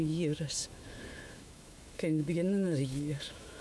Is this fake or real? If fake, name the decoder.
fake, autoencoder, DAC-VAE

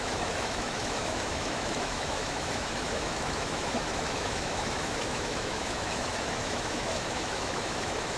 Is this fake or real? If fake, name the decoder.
fake, autoencoder, DAC-VAE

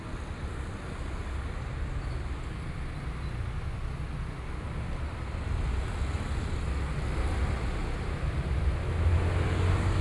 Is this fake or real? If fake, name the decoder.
real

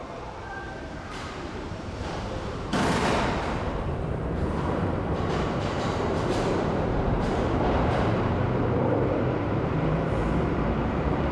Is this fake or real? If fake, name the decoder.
fake, vocoder, BigVGAN v2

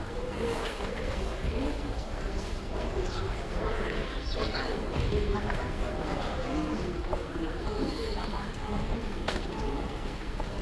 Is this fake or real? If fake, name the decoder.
fake, codec, SNAC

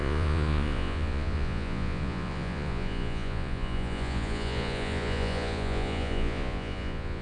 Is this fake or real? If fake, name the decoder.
fake, vocoder, Vocos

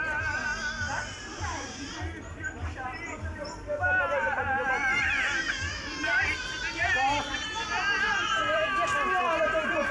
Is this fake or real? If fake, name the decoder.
fake, vocoder, BigVGAN v2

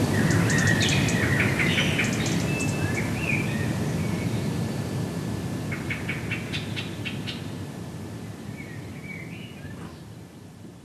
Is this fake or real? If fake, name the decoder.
real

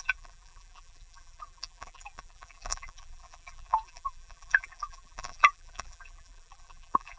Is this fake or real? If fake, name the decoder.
fake, vocoder, BigVGAN v2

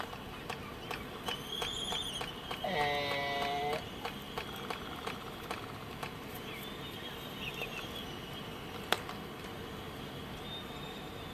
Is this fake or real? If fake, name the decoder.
real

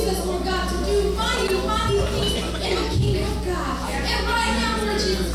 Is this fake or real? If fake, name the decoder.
real